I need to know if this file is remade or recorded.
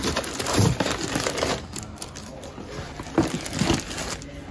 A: recorded